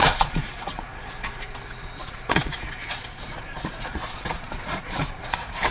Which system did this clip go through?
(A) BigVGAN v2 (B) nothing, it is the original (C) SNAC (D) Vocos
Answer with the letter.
D